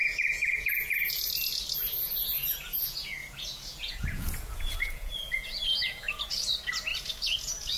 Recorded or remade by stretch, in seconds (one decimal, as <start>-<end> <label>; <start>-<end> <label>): 0.0-1.1 remade; 1.1-1.8 recorded; 1.8-6.5 remade; 6.5-6.9 recorded; 6.9-7.8 remade